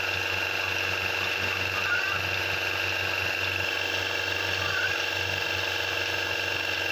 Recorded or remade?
recorded